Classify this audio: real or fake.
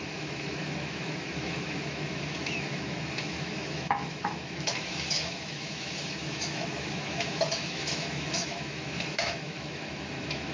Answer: fake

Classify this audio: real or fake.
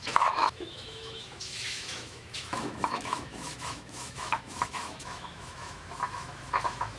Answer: fake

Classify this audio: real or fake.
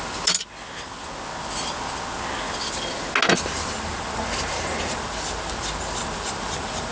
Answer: real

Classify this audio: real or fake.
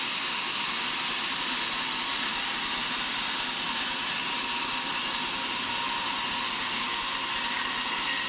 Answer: real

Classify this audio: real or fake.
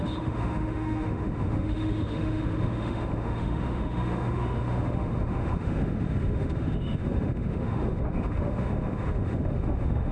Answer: fake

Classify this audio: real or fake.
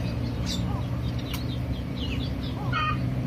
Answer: real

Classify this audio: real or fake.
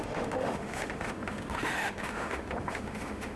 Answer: fake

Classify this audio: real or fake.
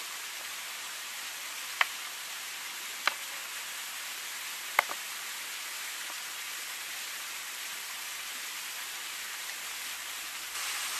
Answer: real